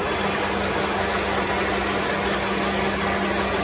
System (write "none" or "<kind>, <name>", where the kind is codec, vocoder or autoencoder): none